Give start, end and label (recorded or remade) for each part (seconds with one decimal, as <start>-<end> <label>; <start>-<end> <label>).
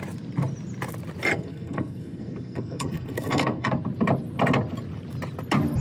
0.0-1.3 recorded; 1.3-3.7 remade; 3.7-5.8 recorded